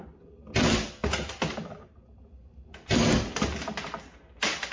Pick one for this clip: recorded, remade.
recorded